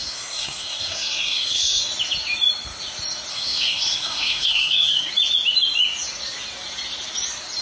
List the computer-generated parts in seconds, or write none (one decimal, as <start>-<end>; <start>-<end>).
0.0-1.9; 3.3-5.1

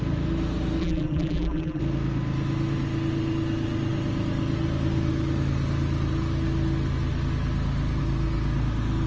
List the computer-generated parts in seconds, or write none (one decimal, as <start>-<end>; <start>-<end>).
0.8-1.8

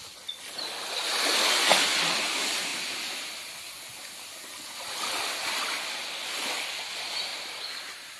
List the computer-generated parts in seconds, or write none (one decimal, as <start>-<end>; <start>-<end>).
7.3-8.2

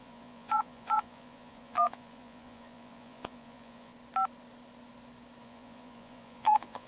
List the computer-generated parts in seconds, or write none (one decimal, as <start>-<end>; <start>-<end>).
0.0-3.9; 5.4-6.9